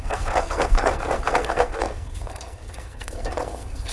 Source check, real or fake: fake